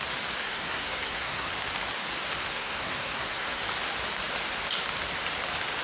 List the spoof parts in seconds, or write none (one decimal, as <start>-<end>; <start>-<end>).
0.4-1.5; 2.5-3.6